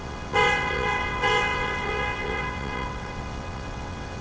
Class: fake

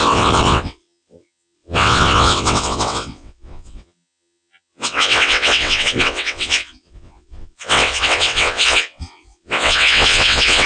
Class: fake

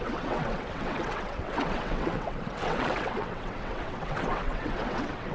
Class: fake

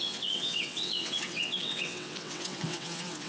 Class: fake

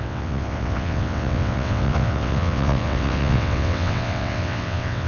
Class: fake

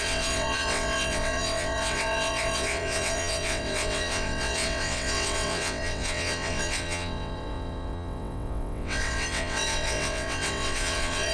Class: fake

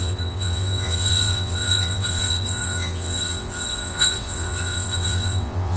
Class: fake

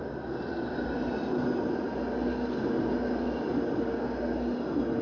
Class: real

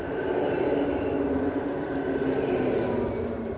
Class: real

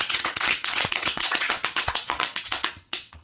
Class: fake